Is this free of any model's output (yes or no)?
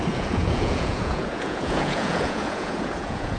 no